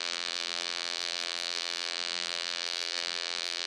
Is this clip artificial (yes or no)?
yes